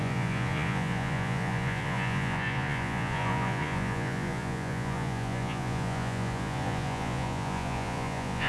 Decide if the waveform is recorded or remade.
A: remade